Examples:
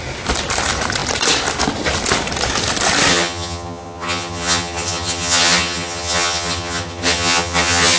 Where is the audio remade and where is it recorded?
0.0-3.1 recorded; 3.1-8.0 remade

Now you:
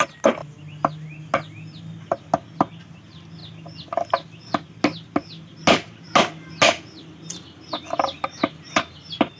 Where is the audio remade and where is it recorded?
0.0-9.4 recorded

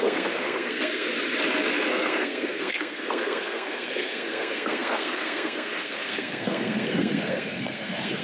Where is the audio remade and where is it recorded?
0.0-1.1 remade; 1.1-1.9 recorded; 1.9-8.2 remade

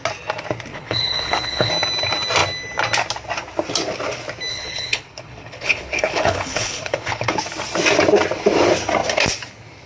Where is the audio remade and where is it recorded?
0.0-0.7 recorded; 0.7-1.7 remade; 1.7-4.5 recorded; 4.5-7.4 remade; 7.4-9.9 recorded

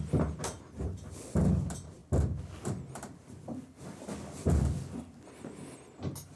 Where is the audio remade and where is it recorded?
0.0-6.4 recorded

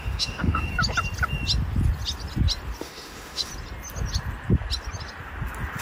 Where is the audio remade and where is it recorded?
0.0-0.7 remade; 0.7-2.8 recorded; 2.8-3.5 remade; 3.5-5.8 recorded